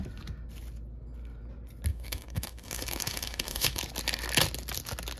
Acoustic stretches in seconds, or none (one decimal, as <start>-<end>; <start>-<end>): 0.0-1.9; 3.8-5.2